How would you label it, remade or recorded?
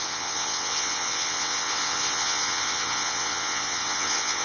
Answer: remade